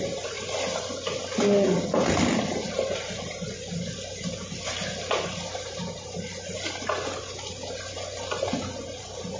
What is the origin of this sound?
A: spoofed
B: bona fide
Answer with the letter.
B